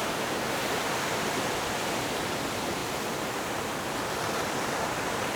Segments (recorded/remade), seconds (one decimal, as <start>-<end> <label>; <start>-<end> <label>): 0.0-0.6 recorded; 0.6-5.4 remade